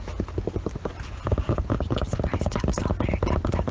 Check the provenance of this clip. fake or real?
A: real